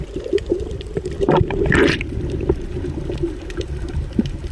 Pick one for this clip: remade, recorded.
remade